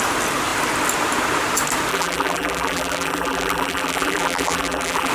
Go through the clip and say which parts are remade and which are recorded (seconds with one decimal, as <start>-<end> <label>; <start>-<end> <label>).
0.0-1.9 recorded; 1.9-5.1 remade